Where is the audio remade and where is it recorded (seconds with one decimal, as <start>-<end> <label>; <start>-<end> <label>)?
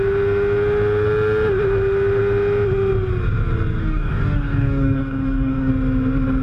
0.0-3.8 recorded; 3.8-5.7 remade; 5.7-6.4 recorded